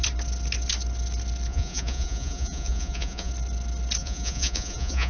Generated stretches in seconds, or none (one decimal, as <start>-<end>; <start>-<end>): 1.5-3.3; 4.0-5.1